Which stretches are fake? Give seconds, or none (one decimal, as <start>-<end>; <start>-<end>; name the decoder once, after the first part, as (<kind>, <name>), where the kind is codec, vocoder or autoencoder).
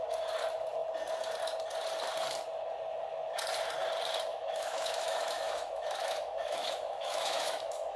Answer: 4.3-8.0 (autoencoder, DAC-VAE)